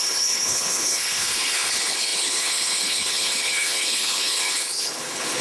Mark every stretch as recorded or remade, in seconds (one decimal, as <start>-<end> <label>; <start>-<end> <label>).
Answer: 0.0-5.4 remade